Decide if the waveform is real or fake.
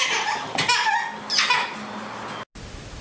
real